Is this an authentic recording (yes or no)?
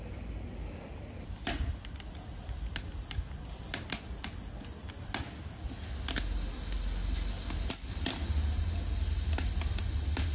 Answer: yes